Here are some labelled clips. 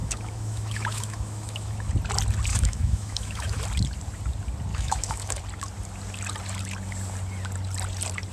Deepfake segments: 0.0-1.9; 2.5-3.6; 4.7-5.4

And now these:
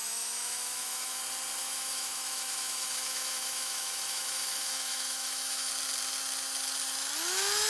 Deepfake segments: 0.0-1.2; 1.6-5.7